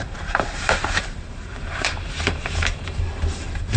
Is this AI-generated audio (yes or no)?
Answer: yes